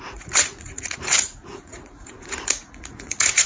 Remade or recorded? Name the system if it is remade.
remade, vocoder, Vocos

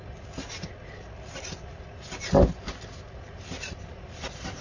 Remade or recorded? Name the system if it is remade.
recorded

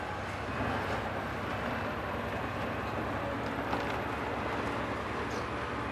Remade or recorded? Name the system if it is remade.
recorded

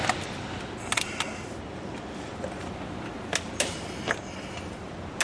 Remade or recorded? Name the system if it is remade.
recorded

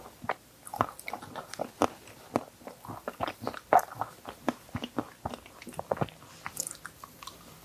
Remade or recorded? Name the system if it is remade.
recorded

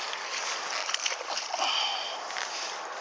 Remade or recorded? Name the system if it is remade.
recorded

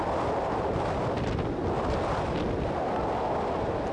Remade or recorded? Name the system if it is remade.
recorded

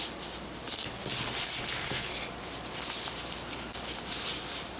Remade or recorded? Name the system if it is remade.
recorded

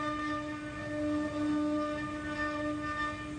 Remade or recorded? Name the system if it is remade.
recorded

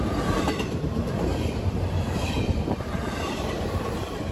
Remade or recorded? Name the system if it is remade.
remade, vocoder, BigVGAN v2